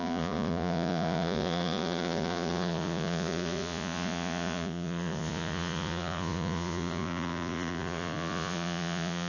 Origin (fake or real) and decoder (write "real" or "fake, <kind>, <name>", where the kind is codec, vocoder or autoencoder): fake, vocoder, Vocos